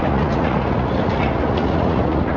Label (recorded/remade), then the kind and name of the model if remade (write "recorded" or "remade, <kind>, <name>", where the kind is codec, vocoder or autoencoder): remade, vocoder, Vocos